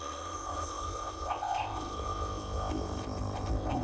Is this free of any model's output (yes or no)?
no